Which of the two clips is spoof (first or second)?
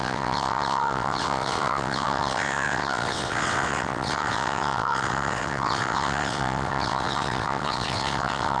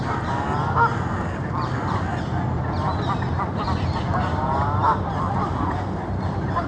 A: first